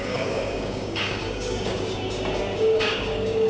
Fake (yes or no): yes